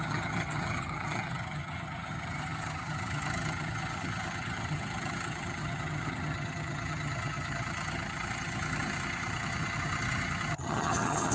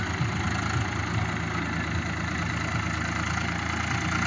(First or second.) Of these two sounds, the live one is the second